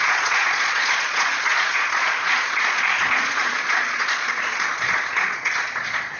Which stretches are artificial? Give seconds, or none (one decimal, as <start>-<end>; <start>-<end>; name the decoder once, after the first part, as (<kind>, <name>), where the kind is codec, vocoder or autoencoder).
0.0-6.2 (vocoder, Vocos)